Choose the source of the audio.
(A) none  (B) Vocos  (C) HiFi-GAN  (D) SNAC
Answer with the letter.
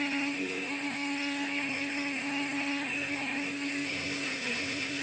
D